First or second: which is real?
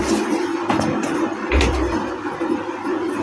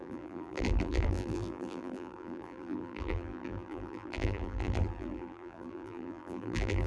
first